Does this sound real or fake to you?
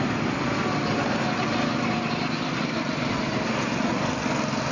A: real